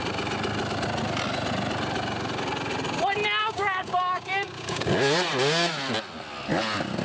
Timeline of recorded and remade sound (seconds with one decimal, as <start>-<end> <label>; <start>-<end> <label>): 0.0-3.4 recorded; 3.4-4.9 remade; 4.9-7.0 recorded